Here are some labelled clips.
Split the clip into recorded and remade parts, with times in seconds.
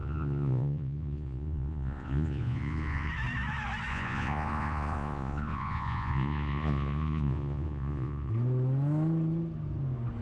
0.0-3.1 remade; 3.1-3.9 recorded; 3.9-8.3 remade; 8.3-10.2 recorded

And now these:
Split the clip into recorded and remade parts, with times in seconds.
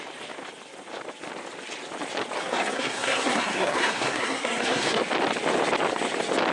0.0-2.4 recorded; 2.4-5.0 remade; 5.0-6.5 recorded